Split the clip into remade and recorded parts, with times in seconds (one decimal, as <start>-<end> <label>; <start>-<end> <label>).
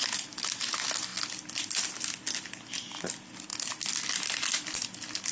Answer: 0.0-5.3 recorded